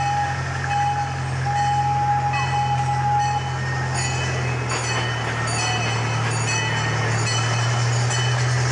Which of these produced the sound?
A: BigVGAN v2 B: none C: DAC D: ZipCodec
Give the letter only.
B